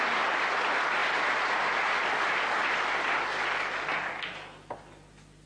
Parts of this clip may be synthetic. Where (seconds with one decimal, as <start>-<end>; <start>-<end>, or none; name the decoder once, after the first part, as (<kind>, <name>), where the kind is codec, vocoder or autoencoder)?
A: none